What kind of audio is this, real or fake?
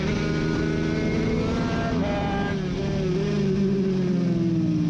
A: real